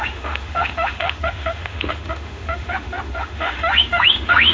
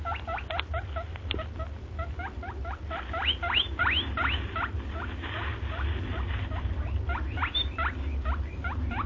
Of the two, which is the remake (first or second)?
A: first